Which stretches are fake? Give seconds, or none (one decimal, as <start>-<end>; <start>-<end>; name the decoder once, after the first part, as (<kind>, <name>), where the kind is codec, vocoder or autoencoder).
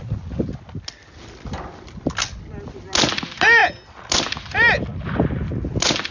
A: none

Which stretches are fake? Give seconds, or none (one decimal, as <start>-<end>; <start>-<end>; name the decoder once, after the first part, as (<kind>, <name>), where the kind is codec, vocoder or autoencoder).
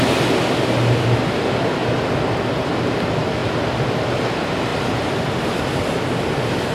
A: none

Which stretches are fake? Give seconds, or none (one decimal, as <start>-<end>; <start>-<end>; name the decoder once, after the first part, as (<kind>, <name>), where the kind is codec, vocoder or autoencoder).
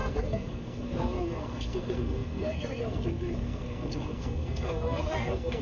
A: 0.0-5.6 (codec, SNAC)